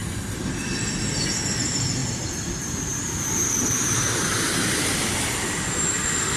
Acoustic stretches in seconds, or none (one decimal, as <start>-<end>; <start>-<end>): 1.1-2.0; 5.8-6.4